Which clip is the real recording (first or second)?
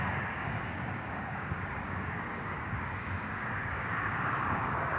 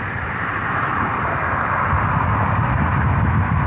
second